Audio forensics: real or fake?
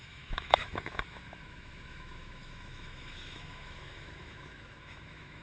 fake